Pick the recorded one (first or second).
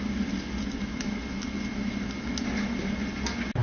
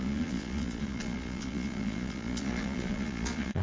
first